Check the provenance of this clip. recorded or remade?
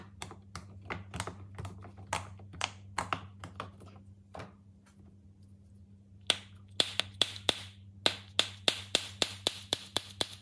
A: recorded